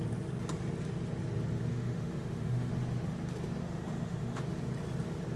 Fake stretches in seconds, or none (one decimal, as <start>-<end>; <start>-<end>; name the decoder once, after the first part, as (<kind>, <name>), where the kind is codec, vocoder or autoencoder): 1.7-2.7 (autoencoder, DAC-VAE); 3.6-4.4